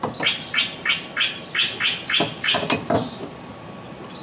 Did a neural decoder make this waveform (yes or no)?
no